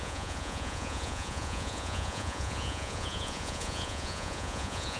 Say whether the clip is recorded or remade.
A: remade